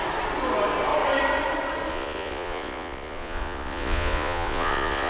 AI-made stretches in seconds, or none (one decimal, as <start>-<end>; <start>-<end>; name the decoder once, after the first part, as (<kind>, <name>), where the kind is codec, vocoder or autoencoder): 1.9-5.1 (vocoder, Vocos)